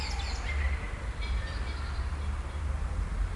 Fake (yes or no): yes